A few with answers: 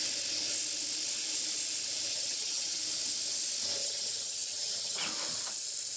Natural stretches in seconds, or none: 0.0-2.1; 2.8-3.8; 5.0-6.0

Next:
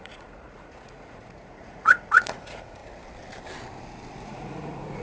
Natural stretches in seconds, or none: 2.8-4.2

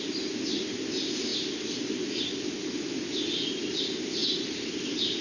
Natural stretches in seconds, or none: 0.0-5.2

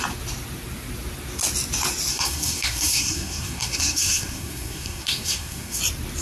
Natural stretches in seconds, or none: 0.0-2.1; 5.8-6.2

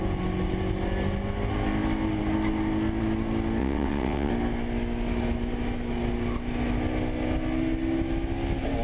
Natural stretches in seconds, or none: 0.0-3.6; 4.3-8.8